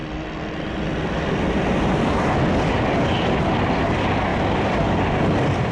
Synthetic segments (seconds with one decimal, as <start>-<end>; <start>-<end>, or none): none